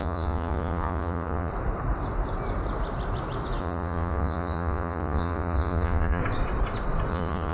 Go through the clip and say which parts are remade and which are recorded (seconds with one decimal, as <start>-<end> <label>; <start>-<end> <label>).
0.0-1.5 remade; 1.5-3.6 recorded; 3.6-6.2 remade; 6.2-7.1 recorded; 7.1-7.5 remade